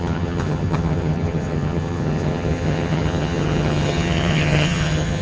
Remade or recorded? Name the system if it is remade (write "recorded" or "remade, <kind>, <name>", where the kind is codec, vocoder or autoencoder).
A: remade, vocoder, HiFi-GAN